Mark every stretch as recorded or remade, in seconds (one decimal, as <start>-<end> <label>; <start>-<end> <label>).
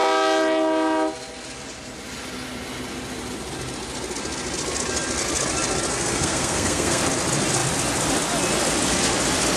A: 0.0-5.9 recorded; 5.9-7.0 remade; 7.0-9.6 recorded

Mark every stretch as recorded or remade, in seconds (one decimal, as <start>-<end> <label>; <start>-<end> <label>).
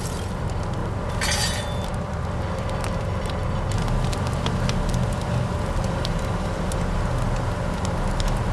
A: 0.0-8.5 recorded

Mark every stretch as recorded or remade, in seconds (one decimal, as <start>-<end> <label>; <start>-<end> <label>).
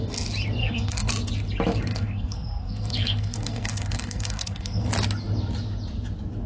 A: 0.0-0.6 recorded; 0.6-1.1 remade; 1.1-1.9 recorded; 1.9-4.9 remade; 4.9-6.5 recorded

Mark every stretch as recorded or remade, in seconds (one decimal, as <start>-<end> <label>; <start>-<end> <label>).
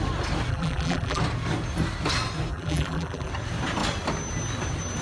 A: 0.0-0.5 recorded; 0.5-1.2 remade; 1.2-2.5 recorded; 2.5-3.3 remade; 3.3-5.0 recorded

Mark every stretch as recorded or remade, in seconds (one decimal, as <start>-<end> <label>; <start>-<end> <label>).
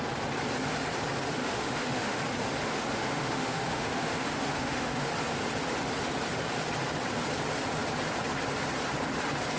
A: 0.0-1.4 recorded; 1.4-2.2 remade; 2.2-2.6 recorded; 2.6-5.1 remade; 5.1-9.6 recorded